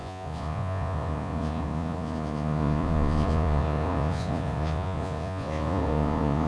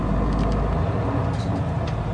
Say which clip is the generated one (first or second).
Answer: first